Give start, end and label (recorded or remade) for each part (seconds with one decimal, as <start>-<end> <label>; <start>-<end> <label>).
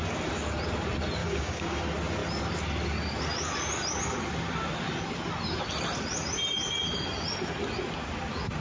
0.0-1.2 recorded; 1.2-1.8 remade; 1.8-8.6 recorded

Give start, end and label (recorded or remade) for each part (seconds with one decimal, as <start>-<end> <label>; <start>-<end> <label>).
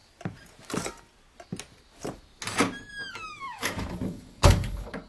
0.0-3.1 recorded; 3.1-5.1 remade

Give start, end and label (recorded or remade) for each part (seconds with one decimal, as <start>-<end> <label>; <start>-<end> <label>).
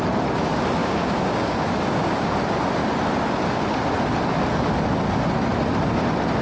0.0-0.8 recorded; 0.8-2.3 remade; 2.3-6.4 recorded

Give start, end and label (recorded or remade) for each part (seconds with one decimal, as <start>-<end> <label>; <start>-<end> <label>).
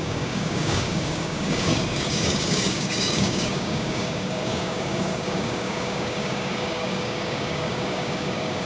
0.0-8.7 remade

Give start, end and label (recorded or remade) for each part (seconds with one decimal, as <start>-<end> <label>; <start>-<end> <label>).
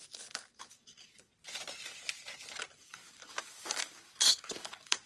0.0-1.3 remade; 1.3-2.6 recorded; 2.6-5.1 remade